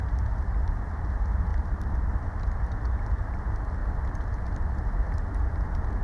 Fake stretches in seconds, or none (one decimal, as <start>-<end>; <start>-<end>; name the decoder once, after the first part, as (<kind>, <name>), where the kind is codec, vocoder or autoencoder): 1.5-2.1 (vocoder, BigVGAN v2); 3.8-5.4